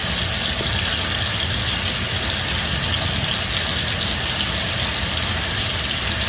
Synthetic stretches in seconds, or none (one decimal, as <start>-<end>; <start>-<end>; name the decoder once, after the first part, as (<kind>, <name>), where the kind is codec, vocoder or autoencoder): none

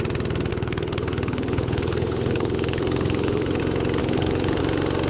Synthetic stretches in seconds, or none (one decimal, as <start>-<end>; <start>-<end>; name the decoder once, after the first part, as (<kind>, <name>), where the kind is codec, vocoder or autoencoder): 0.5-3.6 (codec, HILCodec); 4.0-4.6

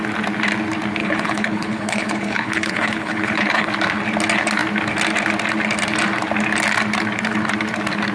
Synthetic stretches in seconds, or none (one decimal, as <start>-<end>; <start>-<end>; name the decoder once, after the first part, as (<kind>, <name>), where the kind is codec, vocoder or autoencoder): 1.0-3.7 (codec, HILCodec)

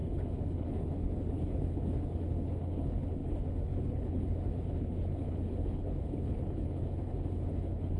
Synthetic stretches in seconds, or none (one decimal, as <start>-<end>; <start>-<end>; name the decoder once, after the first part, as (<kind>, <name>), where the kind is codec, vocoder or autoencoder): 0.0-8.0 (codec, HILCodec)